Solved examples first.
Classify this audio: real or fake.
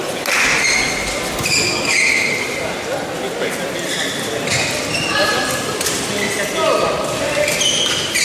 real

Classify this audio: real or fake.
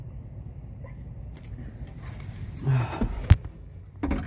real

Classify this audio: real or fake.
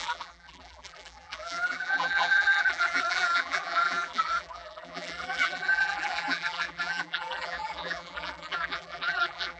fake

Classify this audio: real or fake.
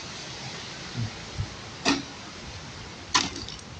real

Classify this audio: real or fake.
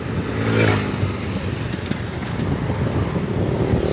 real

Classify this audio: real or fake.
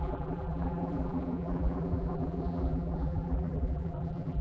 fake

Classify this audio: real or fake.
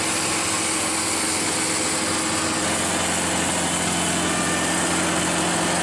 real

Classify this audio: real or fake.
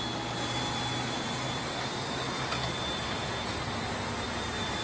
real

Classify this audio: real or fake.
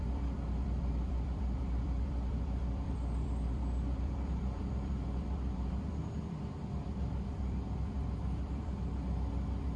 fake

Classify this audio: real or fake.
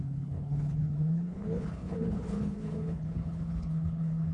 fake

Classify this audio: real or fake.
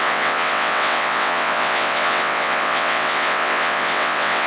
fake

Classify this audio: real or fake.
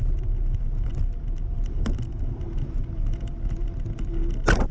real